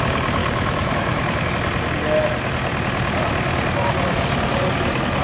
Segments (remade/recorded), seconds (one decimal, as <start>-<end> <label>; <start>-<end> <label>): 0.0-0.4 recorded; 0.4-1.5 remade; 1.5-5.2 recorded